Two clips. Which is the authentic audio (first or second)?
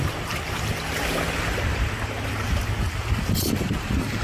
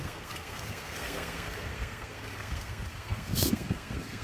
first